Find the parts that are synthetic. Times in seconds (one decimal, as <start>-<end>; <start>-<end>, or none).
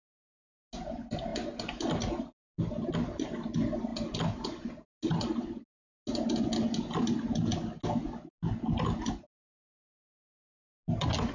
none